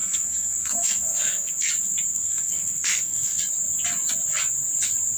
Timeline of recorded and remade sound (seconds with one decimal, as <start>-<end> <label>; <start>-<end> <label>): 0.0-1.7 remade; 1.7-2.1 recorded; 2.1-3.4 remade; 3.4-5.2 recorded